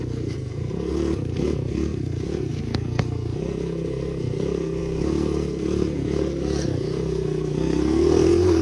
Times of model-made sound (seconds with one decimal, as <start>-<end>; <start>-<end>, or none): 0.0-8.6